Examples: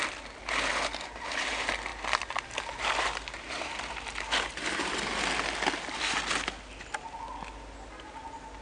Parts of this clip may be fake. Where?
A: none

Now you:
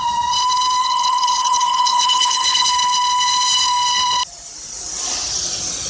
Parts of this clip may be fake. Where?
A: 0.8-2.7 (codec, HILCodec)

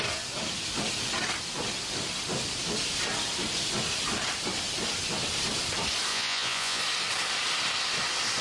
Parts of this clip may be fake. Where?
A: 6.1-6.8 (vocoder, Vocos)

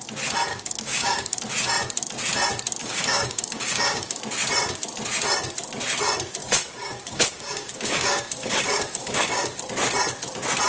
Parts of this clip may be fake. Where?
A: 0.5-1.4 (codec, DAC); 2.8-4.2; 6.4-9.6